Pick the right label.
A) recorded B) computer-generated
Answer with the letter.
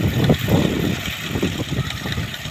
A